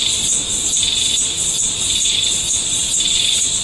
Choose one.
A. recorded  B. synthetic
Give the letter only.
A